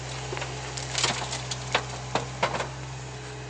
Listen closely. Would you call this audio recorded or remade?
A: recorded